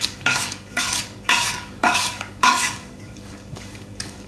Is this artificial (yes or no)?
yes